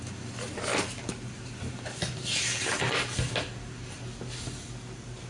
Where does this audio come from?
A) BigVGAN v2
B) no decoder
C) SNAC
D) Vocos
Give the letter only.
B